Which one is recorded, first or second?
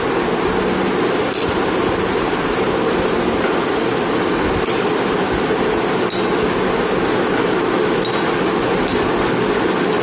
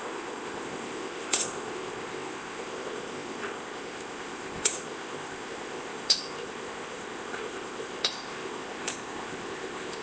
first